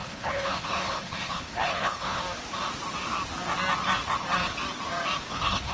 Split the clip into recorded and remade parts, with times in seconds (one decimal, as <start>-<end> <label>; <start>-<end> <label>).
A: 0.0-2.2 remade; 2.2-5.3 recorded; 5.3-5.7 remade